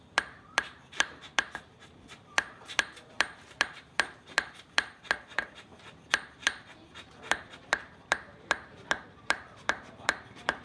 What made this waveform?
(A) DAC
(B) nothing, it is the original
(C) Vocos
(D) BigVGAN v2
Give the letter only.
D